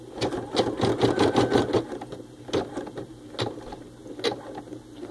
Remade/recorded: recorded